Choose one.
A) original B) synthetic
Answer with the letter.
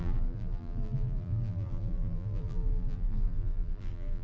B